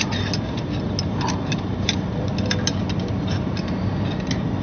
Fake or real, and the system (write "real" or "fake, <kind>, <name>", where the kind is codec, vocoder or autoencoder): real